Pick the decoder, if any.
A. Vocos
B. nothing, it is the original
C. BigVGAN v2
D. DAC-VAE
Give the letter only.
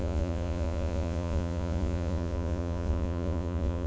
A